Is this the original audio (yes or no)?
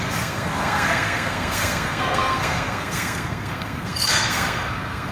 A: no